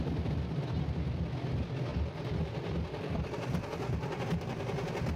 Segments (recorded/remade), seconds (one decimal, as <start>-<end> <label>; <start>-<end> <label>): 0.0-1.9 recorded; 1.9-4.6 remade; 4.6-5.2 recorded